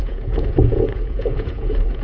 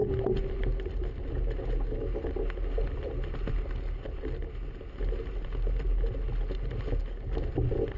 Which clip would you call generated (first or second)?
first